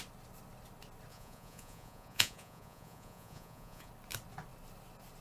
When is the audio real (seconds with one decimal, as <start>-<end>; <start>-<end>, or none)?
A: 0.0-1.1; 3.9-5.2